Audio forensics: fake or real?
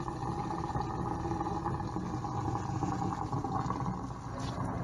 real